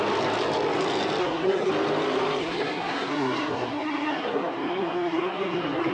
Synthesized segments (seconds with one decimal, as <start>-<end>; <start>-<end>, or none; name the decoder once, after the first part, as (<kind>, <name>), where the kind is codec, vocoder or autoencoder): 1.2-1.7 (codec, SNAC); 2.4-5.9